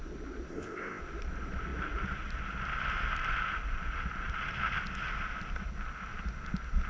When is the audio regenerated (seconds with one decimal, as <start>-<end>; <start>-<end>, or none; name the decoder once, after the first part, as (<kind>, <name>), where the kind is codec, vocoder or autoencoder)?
0.5-1.0 (codec, ZipCodec)